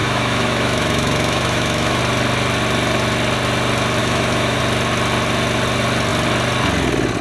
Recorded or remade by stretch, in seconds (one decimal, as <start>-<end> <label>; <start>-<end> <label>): 0.0-2.0 remade; 2.0-4.0 recorded; 4.0-4.6 remade; 4.6-7.2 recorded